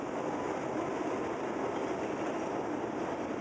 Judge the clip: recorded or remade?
recorded